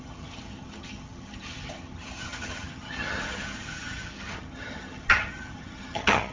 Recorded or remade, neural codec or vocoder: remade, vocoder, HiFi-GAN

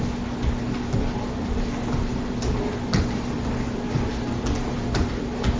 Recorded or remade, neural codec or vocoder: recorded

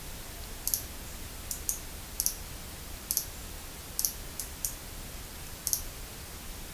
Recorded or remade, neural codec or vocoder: recorded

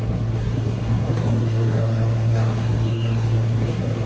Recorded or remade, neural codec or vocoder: remade, codec, SNAC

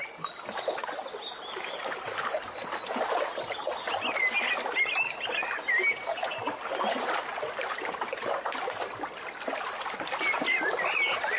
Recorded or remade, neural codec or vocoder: recorded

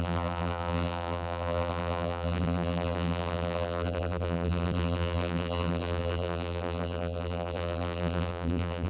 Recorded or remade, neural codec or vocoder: remade, vocoder, BigVGAN v2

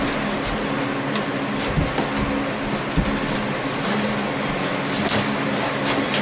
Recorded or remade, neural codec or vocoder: recorded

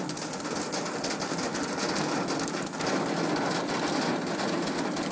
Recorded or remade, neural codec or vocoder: recorded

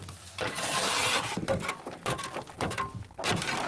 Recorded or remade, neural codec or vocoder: recorded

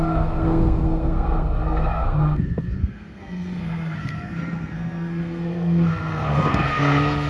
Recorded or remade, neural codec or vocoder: remade, codec, SNAC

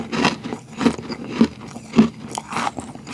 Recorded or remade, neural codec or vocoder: recorded